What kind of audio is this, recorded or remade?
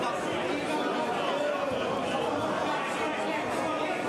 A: recorded